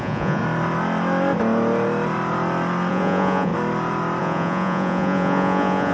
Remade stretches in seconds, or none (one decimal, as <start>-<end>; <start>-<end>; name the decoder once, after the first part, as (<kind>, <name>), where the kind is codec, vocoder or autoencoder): 0.0-0.4 (vocoder, Vocos); 2.9-3.5; 4.2-5.9